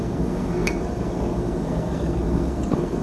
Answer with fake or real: fake